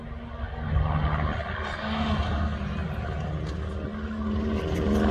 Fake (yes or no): no